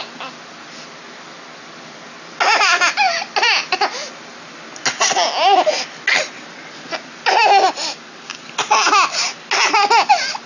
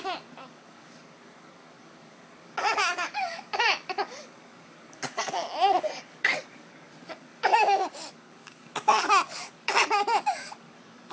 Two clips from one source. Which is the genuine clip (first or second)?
first